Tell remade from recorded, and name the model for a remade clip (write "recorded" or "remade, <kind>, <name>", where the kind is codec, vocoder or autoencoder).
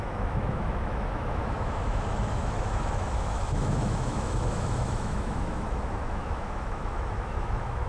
remade, autoencoder, DAC-VAE